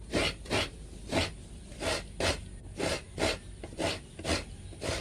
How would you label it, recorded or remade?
recorded